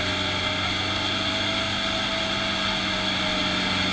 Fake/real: real